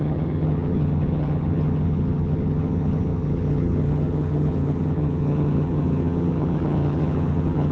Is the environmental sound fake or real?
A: fake